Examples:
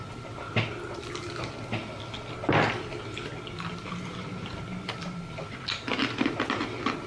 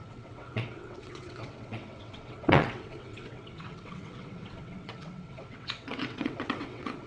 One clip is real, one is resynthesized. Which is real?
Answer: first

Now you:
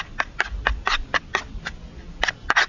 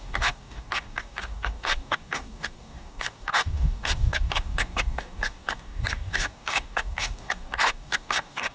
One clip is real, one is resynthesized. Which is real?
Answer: first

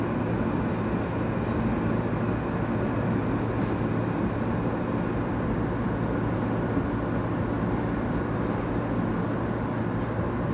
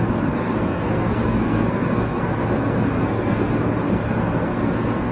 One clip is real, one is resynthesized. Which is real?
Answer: first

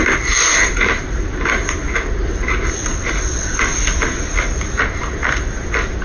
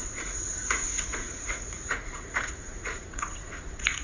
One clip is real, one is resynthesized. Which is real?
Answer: first